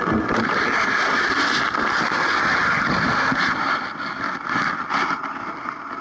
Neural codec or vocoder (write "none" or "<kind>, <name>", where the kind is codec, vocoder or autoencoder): none